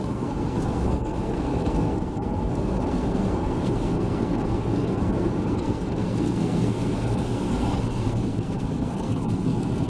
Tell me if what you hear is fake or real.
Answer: fake